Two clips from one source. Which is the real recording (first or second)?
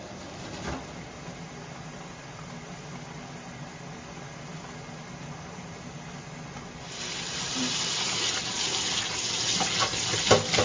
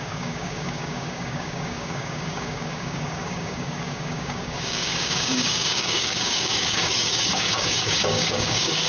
first